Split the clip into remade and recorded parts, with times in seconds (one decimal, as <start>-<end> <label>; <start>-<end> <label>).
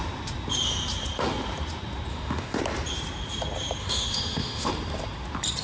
0.0-2.1 recorded; 2.1-2.6 remade; 2.6-3.8 recorded; 3.8-4.7 remade; 4.7-5.6 recorded